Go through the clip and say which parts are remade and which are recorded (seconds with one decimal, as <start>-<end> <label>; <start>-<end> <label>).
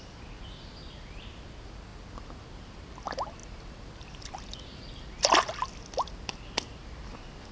0.0-7.5 recorded